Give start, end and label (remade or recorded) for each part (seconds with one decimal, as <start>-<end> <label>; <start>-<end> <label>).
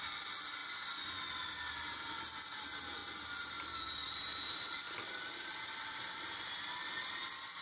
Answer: 0.0-3.0 recorded; 3.0-6.8 remade; 6.8-7.6 recorded